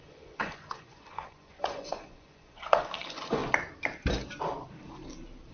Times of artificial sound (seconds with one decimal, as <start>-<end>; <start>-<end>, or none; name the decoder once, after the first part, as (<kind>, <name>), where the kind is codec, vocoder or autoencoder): 0.0-3.4 (vocoder, Vocos)